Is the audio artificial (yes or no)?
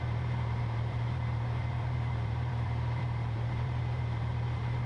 yes